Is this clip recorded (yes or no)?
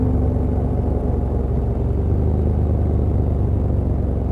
yes